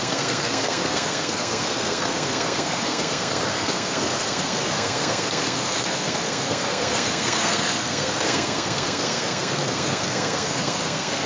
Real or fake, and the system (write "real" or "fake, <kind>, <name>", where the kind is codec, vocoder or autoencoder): fake, codec, SNAC